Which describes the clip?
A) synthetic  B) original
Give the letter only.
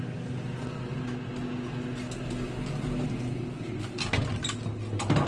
B